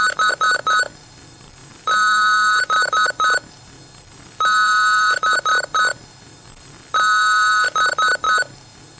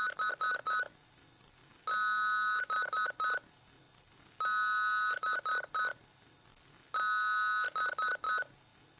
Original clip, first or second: second